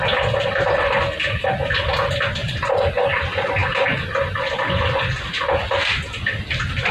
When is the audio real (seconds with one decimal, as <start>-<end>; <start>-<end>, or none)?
0.0-2.4; 2.9-6.9